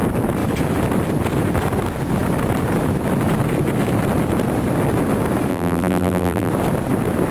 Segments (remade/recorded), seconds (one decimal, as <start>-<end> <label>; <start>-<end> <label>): 0.0-5.5 recorded; 5.5-6.5 remade; 6.5-7.3 recorded